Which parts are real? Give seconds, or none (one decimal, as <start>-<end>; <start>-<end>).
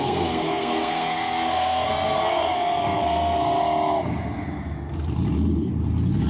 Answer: 3.6-6.3